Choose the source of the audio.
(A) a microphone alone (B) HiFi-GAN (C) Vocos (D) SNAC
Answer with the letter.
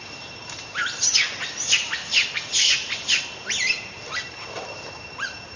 A